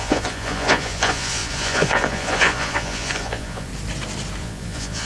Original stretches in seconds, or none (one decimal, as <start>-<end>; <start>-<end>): 3.7-4.4